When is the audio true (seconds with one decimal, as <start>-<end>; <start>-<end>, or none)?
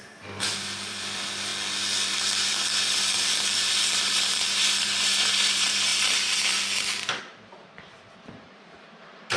1.5-4.8; 5.9-7.2